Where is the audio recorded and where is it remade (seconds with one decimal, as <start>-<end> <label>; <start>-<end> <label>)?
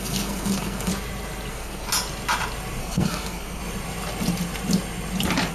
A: 0.0-0.9 remade; 0.9-1.5 recorded; 1.5-1.9 remade; 1.9-2.8 recorded; 2.8-3.6 remade; 3.6-5.5 recorded